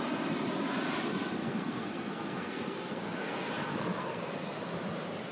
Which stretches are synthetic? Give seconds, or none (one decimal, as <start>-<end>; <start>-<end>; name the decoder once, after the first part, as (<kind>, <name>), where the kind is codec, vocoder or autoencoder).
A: 1.4-4.6 (codec, SNAC)